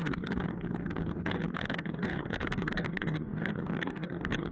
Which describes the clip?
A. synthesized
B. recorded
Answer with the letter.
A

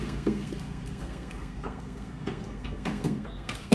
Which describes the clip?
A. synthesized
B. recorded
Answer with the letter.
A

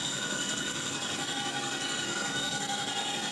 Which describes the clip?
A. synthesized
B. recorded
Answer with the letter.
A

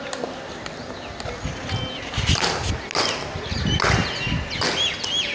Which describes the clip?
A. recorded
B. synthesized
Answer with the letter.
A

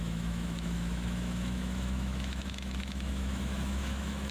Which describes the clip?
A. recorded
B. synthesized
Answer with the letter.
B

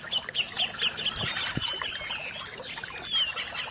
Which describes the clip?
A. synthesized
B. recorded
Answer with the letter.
B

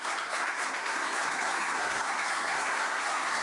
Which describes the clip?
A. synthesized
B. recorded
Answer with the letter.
A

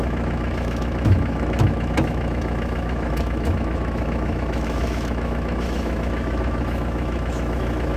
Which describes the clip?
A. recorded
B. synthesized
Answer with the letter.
B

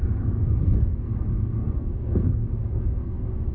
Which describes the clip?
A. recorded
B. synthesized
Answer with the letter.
B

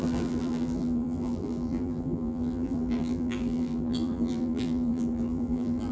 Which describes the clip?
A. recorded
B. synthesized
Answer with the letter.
B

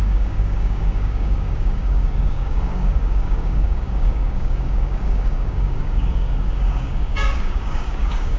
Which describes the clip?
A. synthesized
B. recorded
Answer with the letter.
A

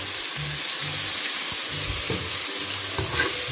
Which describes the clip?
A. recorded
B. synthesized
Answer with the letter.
A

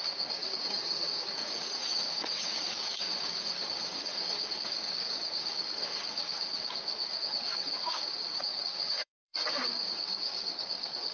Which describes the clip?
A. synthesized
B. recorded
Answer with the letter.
A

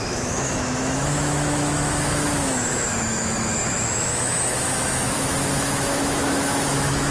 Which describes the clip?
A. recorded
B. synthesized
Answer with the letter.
B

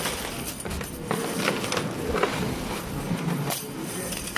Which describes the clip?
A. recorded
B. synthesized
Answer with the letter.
A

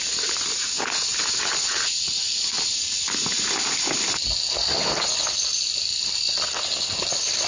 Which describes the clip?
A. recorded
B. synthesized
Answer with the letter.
A